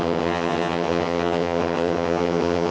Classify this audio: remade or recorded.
remade